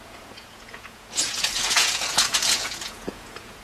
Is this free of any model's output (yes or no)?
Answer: no